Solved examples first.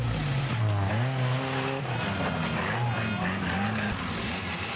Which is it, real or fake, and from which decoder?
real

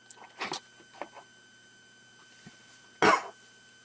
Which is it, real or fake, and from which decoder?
real